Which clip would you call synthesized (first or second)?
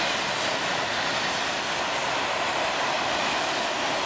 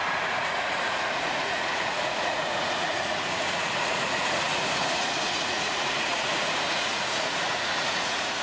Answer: second